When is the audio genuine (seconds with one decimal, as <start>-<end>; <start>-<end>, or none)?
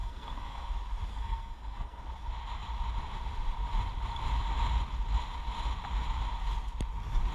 0.7-1.1; 2.0-7.3